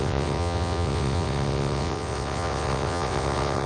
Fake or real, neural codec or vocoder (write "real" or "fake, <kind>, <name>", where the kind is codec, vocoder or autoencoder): fake, vocoder, WaveNeXt